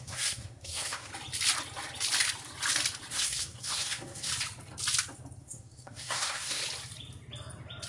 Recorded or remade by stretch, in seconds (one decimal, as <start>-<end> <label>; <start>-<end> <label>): 0.0-1.1 remade; 1.1-3.1 recorded; 3.1-4.3 remade; 4.3-5.4 recorded; 5.4-6.6 remade; 6.6-7.9 recorded